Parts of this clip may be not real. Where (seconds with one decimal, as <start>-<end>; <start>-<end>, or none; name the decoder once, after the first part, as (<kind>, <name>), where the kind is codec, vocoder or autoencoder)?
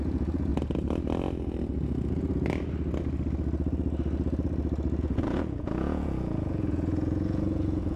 0.0-0.5 (vocoder, Vocos); 5.0-8.0